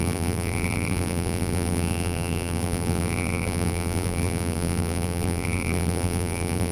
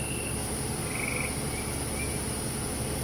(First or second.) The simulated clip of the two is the first